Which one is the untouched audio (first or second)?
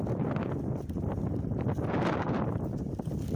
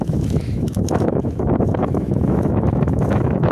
first